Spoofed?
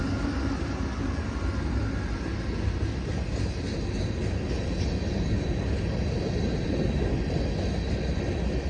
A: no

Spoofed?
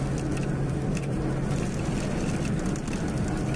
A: no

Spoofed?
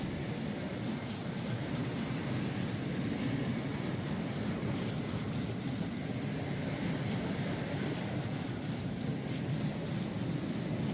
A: no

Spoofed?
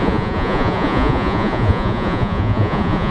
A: yes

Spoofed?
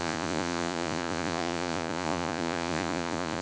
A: yes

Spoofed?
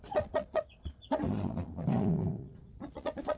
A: yes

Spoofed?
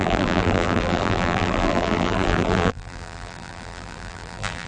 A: yes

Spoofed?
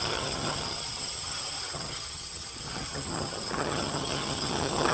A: yes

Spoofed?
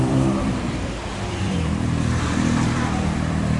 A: yes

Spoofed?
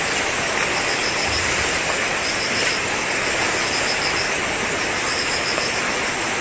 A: no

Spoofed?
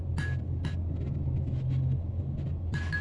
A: no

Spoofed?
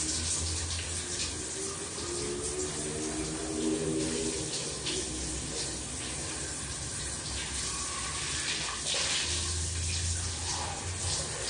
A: no